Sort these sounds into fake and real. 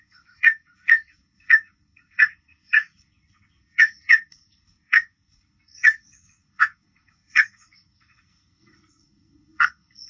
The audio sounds fake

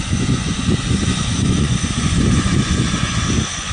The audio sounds fake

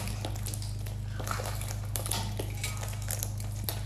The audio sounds real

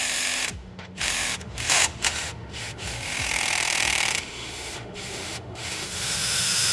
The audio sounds fake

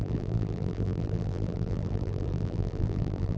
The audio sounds fake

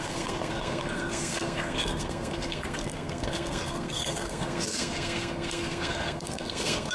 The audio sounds fake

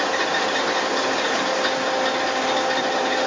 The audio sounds real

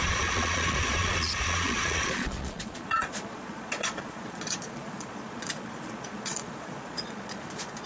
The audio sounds fake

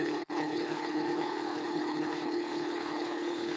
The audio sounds fake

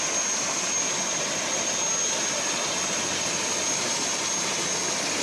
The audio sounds real